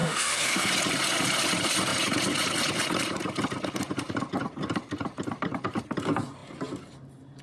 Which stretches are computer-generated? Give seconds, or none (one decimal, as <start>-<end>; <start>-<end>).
0.0-0.7